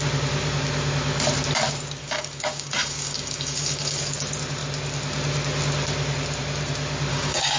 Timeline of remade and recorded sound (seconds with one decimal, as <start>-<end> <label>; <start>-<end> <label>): 0.0-2.0 recorded; 2.0-4.0 remade; 4.0-7.1 recorded; 7.1-7.6 remade